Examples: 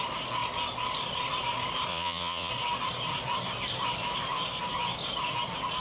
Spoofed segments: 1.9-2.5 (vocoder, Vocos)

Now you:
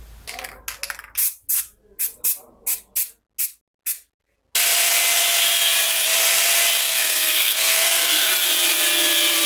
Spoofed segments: 6.8-8.3 (codec, SNAC)

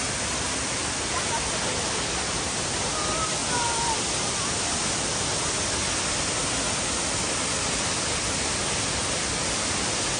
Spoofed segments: none

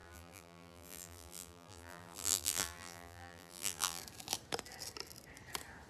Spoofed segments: 0.0-4.0 (vocoder, BigVGAN v2)